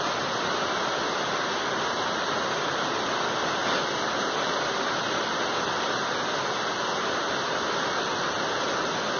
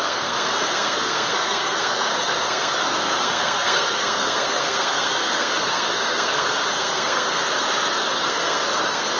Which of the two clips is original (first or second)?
first